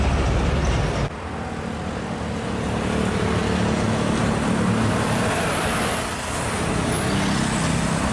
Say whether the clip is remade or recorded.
recorded